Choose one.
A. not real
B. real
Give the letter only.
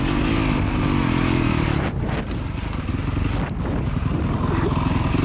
B